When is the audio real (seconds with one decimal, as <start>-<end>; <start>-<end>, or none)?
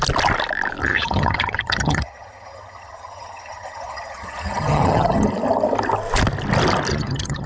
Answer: 0.0-0.8; 5.3-6.9